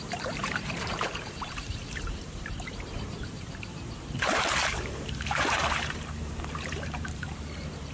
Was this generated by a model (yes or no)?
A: yes